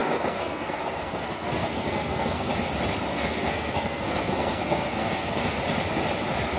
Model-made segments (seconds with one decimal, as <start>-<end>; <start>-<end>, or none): 0.0-2.5; 3.1-5.6